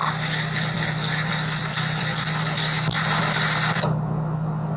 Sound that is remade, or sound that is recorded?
recorded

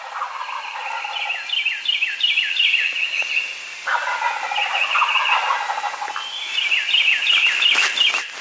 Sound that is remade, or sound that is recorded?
recorded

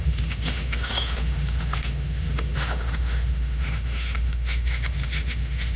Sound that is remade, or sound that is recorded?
remade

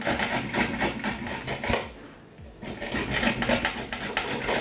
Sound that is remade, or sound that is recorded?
recorded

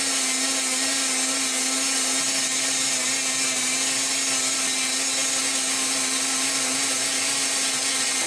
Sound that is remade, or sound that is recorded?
recorded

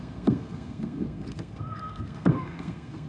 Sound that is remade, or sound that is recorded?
remade